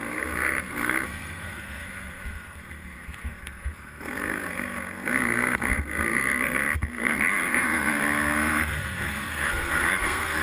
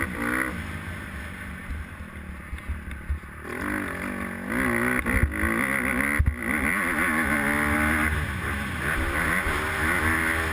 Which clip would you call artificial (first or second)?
first